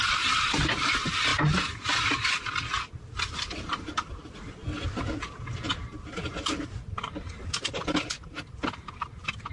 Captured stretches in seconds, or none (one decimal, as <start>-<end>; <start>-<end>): 1.3-3.3; 4.6-5.9